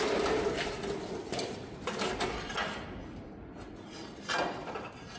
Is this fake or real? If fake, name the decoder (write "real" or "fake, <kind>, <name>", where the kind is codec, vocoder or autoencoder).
real